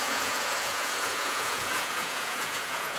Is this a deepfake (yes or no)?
yes